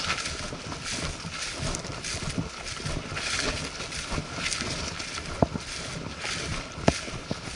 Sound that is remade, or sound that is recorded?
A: recorded